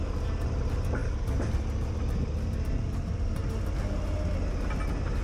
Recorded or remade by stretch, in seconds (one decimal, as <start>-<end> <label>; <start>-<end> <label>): 0.0-5.2 recorded